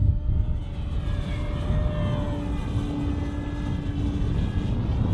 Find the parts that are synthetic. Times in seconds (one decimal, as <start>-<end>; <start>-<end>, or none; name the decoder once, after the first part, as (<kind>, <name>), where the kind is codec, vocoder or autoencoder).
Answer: none